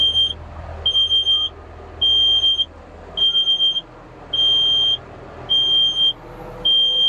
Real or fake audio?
real